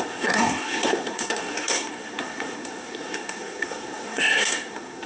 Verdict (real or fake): fake